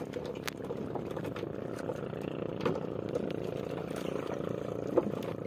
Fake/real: real